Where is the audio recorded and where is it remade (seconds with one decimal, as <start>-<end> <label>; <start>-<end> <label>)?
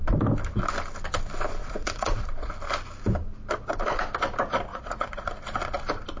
0.0-1.6 recorded; 1.6-2.5 remade; 2.5-4.7 recorded; 4.7-5.3 remade; 5.3-6.2 recorded